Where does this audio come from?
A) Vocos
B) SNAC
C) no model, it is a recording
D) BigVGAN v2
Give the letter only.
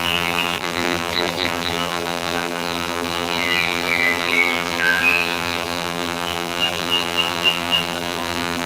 D